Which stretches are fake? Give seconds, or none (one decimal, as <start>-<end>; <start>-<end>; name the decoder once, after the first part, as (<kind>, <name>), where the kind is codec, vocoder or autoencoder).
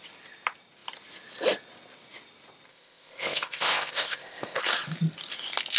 2.7-4.6 (codec, ZipCodec)